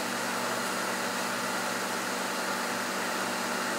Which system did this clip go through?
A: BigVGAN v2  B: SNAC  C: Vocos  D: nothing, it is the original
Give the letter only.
D